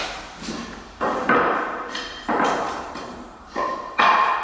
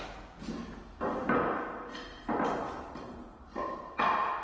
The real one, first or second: second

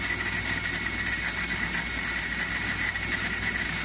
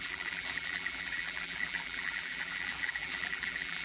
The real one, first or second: first